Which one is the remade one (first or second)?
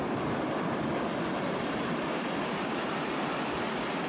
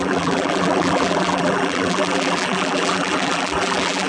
second